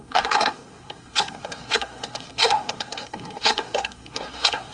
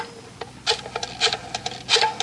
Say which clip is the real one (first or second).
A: second